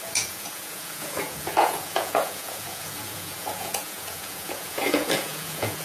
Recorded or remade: remade